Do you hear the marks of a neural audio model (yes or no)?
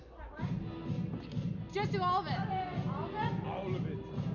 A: no